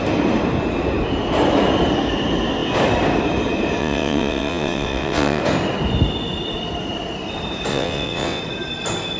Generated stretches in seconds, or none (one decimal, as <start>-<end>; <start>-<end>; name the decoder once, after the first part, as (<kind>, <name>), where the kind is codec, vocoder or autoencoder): 3.8-5.4 (vocoder, WaveNeXt); 7.7-8.4